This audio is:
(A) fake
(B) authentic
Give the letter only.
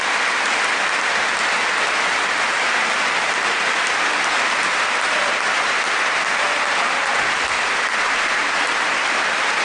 B